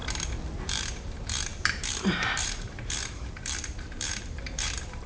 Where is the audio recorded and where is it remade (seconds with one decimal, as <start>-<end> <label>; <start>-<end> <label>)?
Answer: 0.0-0.6 recorded; 0.6-5.1 remade